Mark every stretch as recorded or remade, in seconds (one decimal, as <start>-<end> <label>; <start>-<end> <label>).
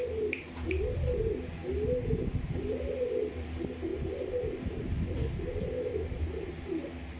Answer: 0.0-1.6 remade; 1.6-2.6 recorded; 2.6-3.9 remade; 3.9-4.6 recorded; 4.6-5.9 remade; 5.9-6.5 recorded; 6.5-7.2 remade